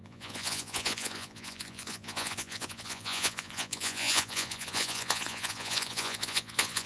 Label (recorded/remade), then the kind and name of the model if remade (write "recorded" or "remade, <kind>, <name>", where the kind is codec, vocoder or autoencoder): remade, vocoder, Vocos